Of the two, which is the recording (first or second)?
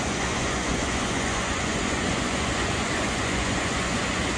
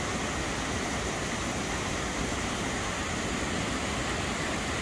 second